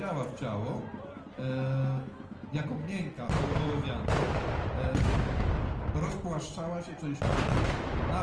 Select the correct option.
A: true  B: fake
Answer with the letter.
A